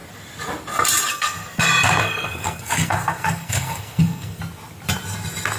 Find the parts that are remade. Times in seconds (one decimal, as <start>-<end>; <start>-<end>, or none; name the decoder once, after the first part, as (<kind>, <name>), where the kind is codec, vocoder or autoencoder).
1.1-1.6 (codec, SNAC); 2.0-4.4